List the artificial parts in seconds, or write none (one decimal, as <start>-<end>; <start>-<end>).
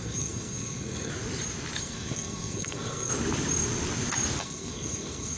0.0-1.1; 1.8-3.1; 4.4-5.4